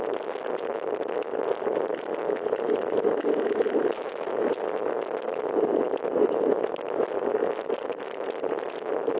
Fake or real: real